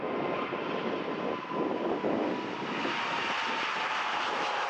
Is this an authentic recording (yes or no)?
yes